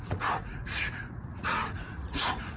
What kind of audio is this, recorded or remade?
remade